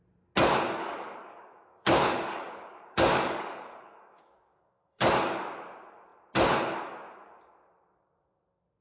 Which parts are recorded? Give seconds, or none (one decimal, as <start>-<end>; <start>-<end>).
0.0-0.8; 5.1-8.8